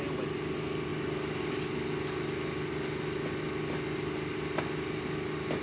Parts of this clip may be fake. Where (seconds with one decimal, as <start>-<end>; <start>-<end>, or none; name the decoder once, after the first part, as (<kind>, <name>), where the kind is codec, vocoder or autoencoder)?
none